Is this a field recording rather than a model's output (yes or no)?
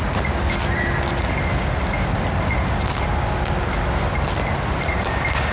yes